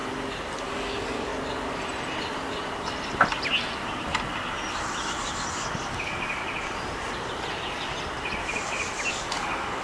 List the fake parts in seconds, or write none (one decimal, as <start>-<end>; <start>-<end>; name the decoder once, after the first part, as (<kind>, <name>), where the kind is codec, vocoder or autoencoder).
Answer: 0.7-1.3 (codec, DAC); 5.9-6.4; 9.1-9.8